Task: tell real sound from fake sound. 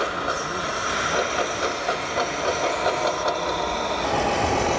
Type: real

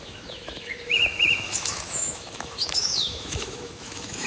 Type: fake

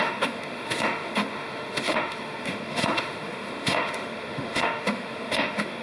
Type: fake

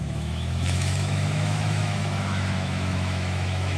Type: fake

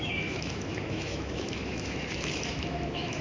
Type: fake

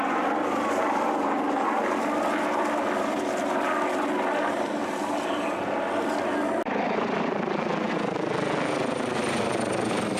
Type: real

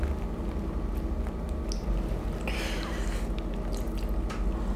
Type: real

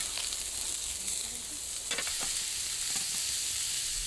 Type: real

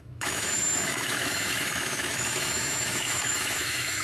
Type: fake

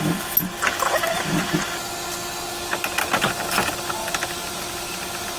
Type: real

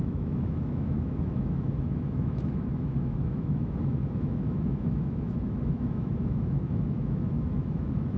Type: fake